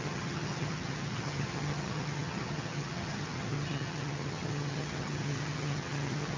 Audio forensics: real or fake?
fake